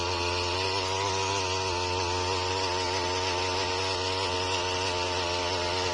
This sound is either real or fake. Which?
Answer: real